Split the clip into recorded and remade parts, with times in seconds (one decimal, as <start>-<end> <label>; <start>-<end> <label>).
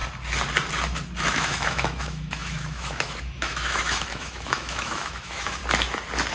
0.0-1.2 recorded; 1.2-5.6 remade; 5.6-6.3 recorded